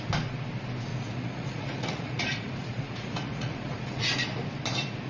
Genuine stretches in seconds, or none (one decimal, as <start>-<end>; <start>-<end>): 0.0-0.9; 4.0-5.1